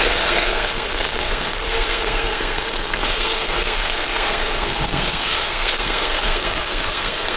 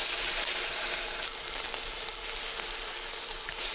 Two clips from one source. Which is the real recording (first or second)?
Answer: second